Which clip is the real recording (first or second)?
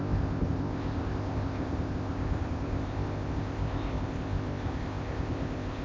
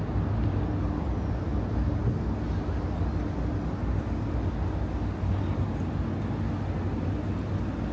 second